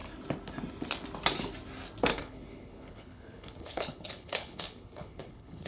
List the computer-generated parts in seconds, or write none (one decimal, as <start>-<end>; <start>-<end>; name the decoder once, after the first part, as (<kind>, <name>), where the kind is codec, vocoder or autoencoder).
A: 2.1-5.7 (codec, HILCodec)